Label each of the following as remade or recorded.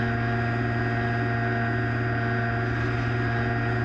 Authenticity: recorded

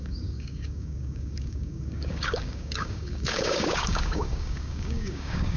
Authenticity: remade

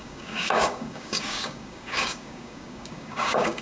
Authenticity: remade